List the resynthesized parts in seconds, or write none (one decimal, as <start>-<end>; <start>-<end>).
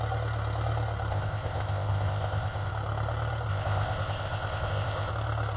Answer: 1.1-2.7; 3.5-5.1